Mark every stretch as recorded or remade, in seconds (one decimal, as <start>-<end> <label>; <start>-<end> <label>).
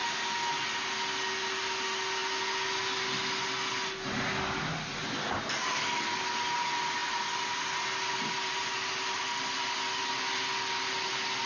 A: 0.0-0.5 remade; 0.5-7.0 recorded; 7.0-9.2 remade; 9.2-11.5 recorded